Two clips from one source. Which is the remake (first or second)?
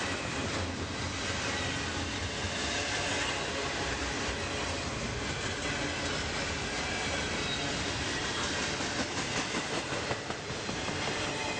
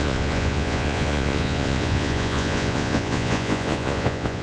second